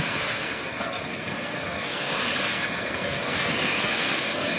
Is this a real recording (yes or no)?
no